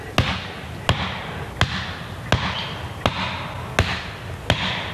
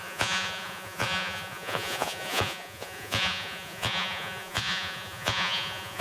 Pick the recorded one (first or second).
first